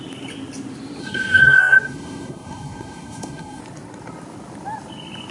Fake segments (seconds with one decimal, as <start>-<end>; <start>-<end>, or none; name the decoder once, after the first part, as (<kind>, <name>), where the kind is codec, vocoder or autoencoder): 1.0-3.6 (codec, SNAC)